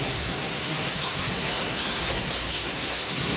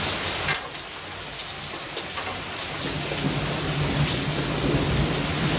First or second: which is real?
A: second